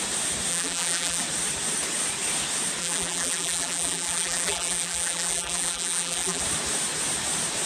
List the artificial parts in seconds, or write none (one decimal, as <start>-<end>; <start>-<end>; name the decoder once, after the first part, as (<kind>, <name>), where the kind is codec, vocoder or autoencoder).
0.5-1.2 (vocoder, BigVGAN v2); 2.8-6.4